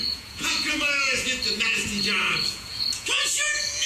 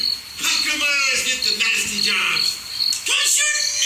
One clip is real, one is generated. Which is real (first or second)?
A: second